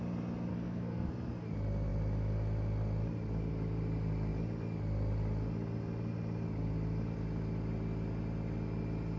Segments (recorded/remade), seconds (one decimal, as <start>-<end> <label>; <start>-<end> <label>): 0.0-0.5 recorded; 0.5-1.1 remade; 1.1-9.2 recorded